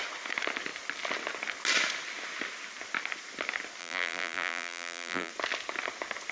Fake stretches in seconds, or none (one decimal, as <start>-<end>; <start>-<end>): 3.8-5.3